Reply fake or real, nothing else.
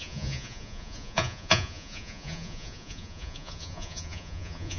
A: fake